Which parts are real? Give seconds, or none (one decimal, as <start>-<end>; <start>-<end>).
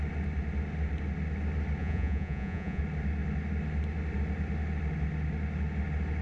0.0-1.8; 2.8-6.2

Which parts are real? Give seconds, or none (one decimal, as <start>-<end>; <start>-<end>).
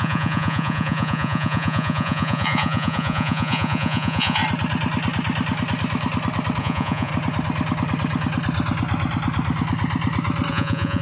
4.4-6.6; 7.1-10.5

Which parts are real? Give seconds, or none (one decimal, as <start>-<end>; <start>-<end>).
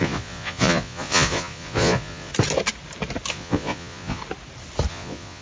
2.3-3.3; 4.2-4.9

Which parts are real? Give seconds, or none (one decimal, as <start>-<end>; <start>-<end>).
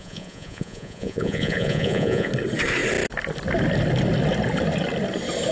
2.3-5.5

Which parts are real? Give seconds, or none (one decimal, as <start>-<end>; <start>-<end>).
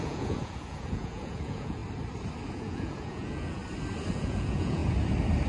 1.8-2.5; 3.6-4.1; 4.8-5.5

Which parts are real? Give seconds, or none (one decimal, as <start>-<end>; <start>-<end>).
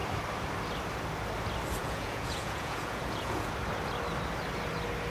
0.0-1.8; 3.5-5.1